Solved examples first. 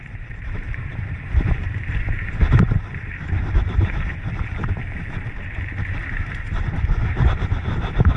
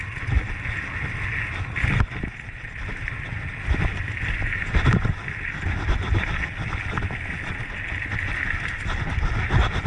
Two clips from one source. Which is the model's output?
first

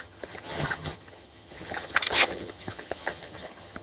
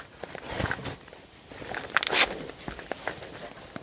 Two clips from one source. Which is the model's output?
first